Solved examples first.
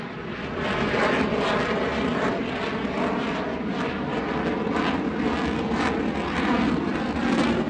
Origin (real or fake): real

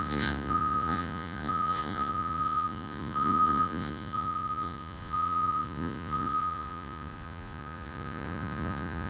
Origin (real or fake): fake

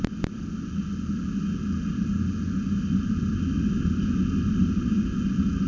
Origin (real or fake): real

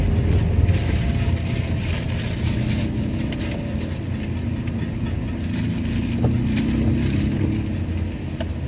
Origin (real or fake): real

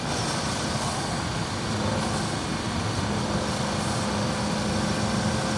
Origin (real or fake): real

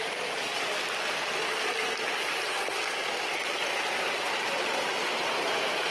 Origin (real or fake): real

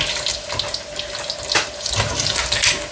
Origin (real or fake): real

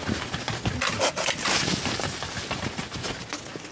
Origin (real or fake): real